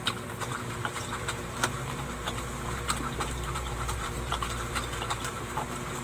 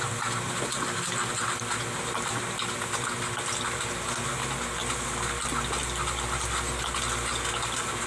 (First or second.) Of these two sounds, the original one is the second